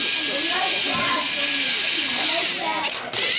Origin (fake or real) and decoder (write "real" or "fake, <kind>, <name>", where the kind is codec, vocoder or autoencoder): real